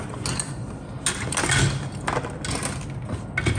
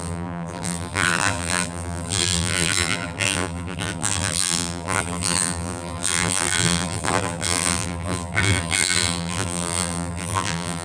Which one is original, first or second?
first